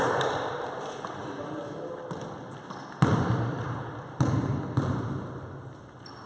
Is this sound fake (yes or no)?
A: no